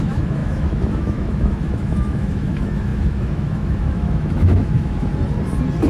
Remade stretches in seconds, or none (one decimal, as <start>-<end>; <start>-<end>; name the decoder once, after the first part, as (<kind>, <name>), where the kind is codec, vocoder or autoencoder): 0.0-5.1 (autoencoder, DAC-VAE)